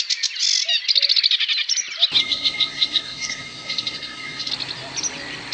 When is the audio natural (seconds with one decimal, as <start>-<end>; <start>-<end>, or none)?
0.0-2.2; 4.5-5.5